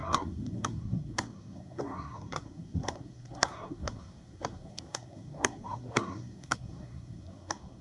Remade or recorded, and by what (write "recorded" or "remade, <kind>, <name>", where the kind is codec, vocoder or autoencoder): remade, codec, SNAC